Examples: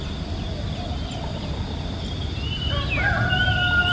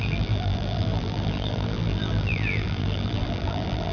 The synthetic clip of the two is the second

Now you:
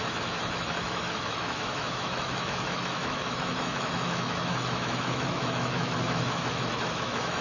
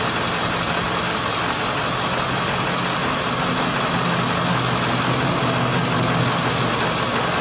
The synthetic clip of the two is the first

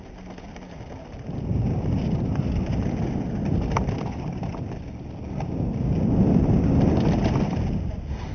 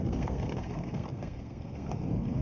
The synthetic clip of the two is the second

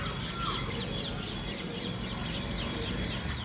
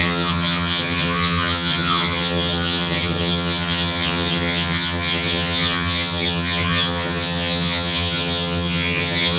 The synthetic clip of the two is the second